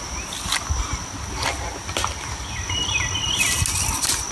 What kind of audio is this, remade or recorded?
recorded